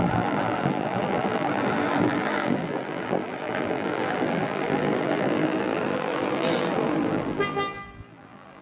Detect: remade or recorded remade